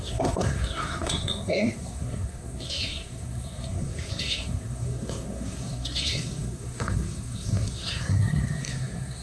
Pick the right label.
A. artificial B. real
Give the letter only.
A